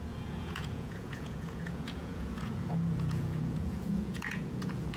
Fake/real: fake